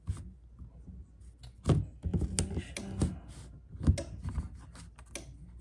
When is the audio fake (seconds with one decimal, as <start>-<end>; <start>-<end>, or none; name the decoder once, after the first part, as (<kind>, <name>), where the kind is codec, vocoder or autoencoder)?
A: none